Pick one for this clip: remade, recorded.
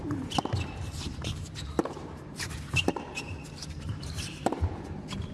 remade